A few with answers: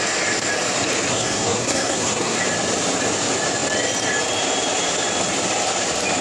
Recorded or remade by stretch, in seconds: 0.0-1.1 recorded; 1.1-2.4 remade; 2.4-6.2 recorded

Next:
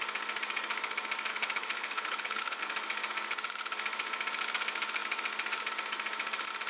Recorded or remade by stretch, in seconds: 0.0-1.3 recorded; 1.3-2.6 remade; 2.6-6.7 recorded